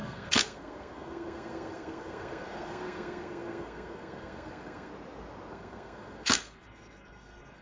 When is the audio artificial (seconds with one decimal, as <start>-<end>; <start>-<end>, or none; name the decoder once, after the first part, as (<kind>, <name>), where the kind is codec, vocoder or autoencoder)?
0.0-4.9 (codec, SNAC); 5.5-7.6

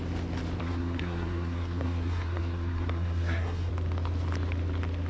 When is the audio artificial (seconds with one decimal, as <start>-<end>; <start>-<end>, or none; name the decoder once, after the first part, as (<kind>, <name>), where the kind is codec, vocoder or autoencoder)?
0.6-3.7 (codec, SNAC)

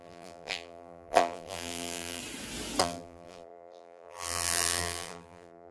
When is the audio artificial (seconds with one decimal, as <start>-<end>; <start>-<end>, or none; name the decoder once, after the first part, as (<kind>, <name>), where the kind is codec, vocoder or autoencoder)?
0.0-2.2 (vocoder, BigVGAN v2); 2.8-5.7

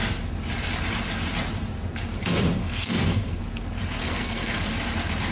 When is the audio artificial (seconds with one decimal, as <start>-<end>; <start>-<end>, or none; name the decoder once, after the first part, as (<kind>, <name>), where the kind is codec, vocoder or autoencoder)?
2.6-3.4 (codec, SNAC); 4.0-4.6

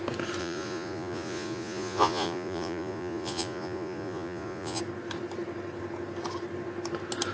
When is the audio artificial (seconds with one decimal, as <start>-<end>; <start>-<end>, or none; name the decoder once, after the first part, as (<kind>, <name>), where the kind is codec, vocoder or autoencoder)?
0.4-4.8 (vocoder, Vocos)

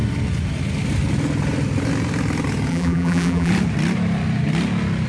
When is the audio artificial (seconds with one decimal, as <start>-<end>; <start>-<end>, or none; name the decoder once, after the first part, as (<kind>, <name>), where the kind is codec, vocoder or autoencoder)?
2.7-3.5 (vocoder, BigVGAN v2)